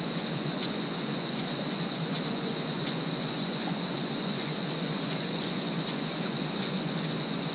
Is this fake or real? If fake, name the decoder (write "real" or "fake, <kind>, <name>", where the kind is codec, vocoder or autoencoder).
fake, vocoder, Vocos